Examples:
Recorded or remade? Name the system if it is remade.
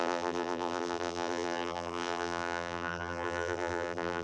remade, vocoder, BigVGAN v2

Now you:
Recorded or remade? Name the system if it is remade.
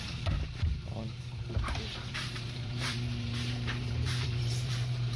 remade, vocoder, BigVGAN v2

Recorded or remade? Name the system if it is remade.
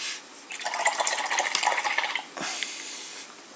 recorded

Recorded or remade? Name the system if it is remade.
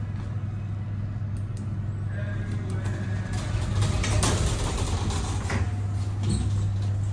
recorded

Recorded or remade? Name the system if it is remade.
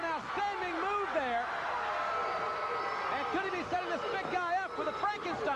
recorded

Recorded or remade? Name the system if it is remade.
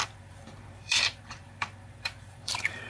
remade, vocoder, BigVGAN v2